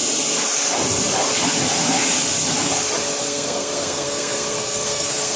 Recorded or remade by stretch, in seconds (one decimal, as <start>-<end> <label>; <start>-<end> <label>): 0.0-3.2 recorded; 3.2-5.4 remade